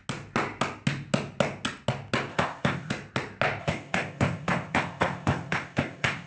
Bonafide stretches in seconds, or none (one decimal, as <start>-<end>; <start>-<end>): 0.0-2.3; 2.9-3.6